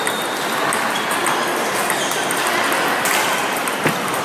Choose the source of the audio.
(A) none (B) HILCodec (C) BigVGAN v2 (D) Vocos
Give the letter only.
C